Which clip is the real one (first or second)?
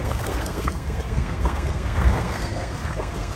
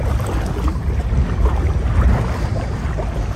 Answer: second